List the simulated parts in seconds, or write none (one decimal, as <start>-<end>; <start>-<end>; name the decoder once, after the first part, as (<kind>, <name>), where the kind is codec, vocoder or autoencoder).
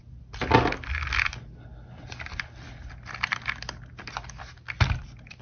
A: none